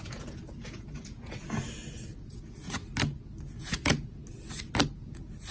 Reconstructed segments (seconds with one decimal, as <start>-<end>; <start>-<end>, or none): 0.0-1.8; 2.3-2.8; 3.6-4.2; 5.0-5.5